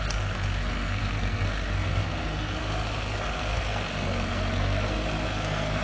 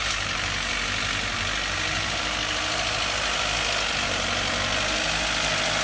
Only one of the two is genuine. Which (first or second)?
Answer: second